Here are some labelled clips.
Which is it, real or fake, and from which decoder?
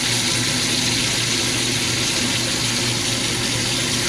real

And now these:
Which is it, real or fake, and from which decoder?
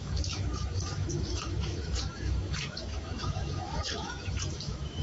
fake, autoencoder, DAC-VAE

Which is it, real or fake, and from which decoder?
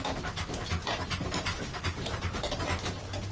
real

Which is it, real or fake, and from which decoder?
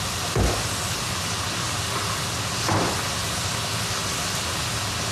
real